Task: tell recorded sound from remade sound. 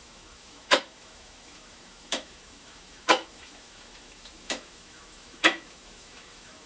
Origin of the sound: remade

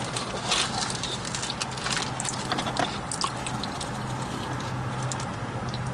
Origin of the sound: recorded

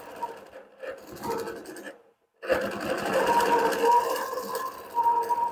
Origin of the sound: recorded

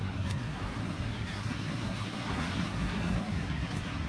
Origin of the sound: remade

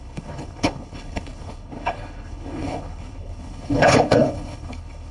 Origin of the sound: remade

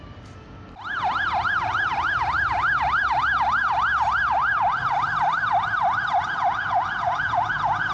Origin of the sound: recorded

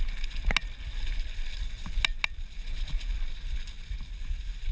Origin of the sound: recorded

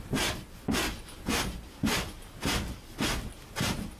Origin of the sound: recorded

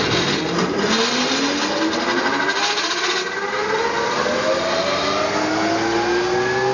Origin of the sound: recorded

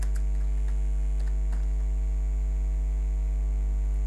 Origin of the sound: recorded